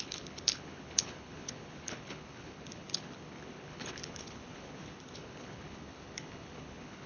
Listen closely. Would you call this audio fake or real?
fake